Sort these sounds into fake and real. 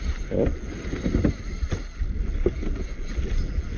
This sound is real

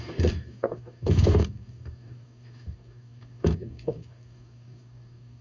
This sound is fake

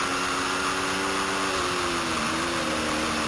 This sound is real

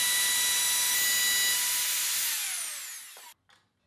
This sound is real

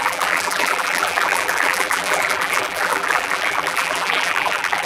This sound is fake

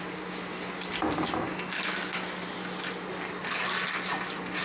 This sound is real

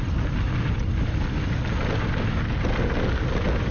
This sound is real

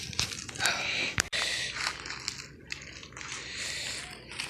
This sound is real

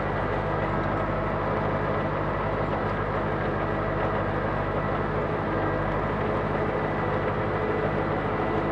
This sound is real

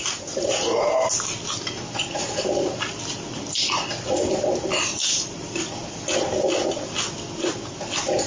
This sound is real